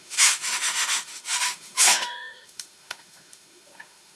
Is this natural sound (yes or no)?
no